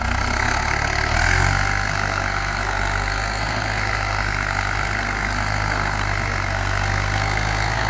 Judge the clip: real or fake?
fake